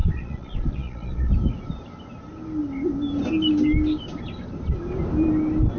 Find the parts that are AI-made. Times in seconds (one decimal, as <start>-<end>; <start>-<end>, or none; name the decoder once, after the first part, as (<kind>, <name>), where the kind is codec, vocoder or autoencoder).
0.0-1.3 (vocoder, Vocos)